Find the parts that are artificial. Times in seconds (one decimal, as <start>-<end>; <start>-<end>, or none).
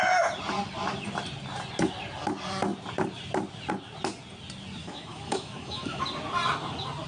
4.8-6.0